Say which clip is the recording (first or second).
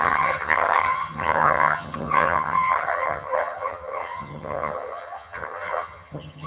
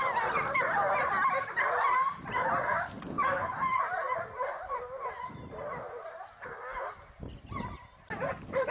second